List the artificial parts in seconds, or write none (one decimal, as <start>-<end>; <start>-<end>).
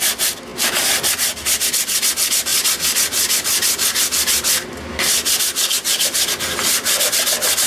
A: none